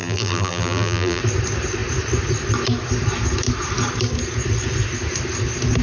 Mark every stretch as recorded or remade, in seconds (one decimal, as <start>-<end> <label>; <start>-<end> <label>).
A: 0.0-1.2 remade; 1.2-5.8 recorded